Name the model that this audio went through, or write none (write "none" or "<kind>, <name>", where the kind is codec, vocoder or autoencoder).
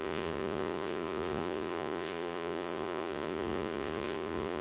vocoder, Vocos